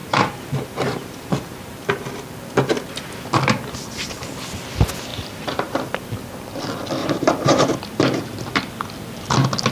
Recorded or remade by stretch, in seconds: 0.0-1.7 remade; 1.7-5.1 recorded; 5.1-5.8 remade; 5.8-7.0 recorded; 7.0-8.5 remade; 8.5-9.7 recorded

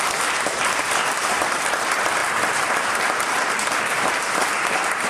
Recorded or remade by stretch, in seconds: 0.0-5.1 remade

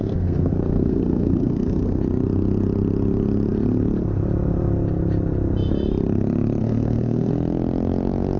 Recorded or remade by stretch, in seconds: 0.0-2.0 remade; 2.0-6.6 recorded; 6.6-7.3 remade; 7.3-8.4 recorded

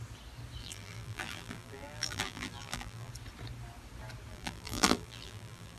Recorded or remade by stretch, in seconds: 0.0-0.6 recorded; 0.6-3.1 remade; 3.1-4.3 recorded; 4.3-5.8 remade